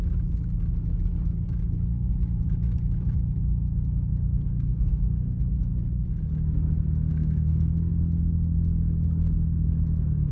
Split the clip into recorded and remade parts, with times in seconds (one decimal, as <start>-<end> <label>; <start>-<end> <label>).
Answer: 0.0-4.1 recorded; 4.1-5.4 remade; 5.4-7.1 recorded; 7.1-7.9 remade; 7.9-10.3 recorded